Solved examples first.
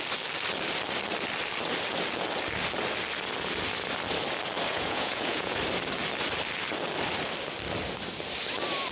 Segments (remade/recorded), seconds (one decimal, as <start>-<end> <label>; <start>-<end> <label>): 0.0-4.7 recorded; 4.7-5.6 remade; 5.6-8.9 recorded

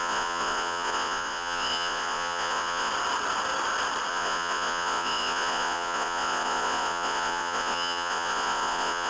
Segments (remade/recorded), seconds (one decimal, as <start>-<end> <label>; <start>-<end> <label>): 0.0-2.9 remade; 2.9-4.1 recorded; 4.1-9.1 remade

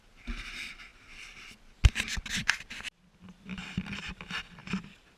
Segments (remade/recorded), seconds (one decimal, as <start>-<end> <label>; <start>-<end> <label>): 0.0-4.6 recorded; 4.6-5.2 remade

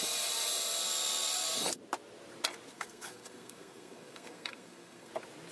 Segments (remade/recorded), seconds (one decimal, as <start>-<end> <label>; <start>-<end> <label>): 0.0-2.7 recorded; 2.7-5.1 remade; 5.1-5.5 recorded

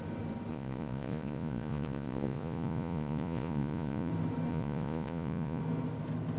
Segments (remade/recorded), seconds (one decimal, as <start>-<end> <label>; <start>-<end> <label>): 0.0-0.5 recorded; 0.5-4.1 remade; 4.1-4.5 recorded; 4.5-5.6 remade; 5.6-6.4 recorded